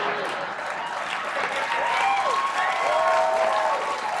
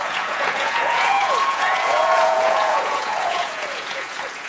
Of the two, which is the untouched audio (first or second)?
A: first